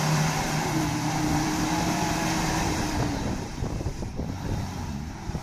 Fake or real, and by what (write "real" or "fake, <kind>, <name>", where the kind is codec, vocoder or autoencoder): fake, vocoder, BigVGAN v2